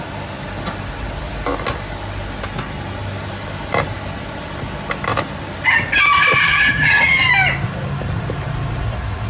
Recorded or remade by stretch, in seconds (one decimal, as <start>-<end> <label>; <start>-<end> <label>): 0.0-6.5 recorded; 6.5-7.2 remade; 7.2-9.3 recorded